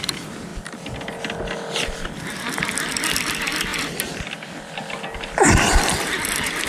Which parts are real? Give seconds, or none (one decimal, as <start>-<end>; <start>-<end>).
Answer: 0.0-3.7